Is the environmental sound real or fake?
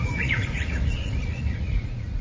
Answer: fake